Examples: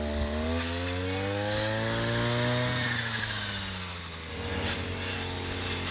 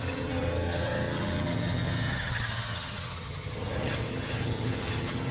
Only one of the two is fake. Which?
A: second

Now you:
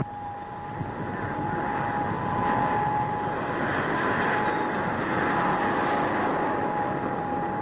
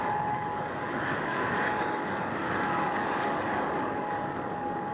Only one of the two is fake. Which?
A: second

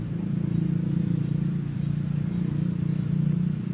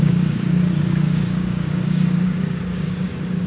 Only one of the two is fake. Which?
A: second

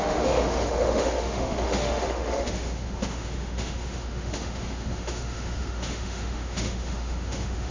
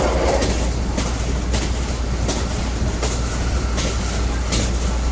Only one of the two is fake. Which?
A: first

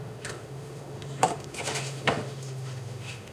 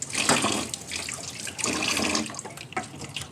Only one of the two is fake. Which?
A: first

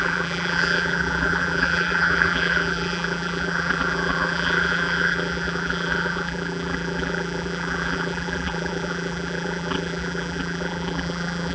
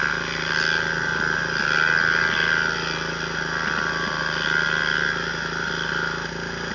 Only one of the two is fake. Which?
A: first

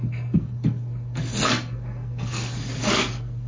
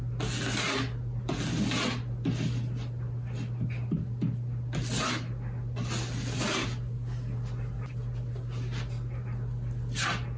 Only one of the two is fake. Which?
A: first